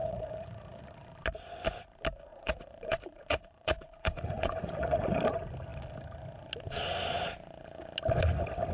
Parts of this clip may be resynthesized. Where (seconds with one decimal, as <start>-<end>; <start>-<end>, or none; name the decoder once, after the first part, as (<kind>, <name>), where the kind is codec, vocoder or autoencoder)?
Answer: 0.0-0.8 (vocoder, Vocos); 2.3-5.2